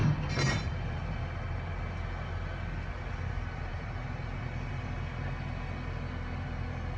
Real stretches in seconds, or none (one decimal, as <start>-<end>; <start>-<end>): 1.8-3.7; 4.4-7.0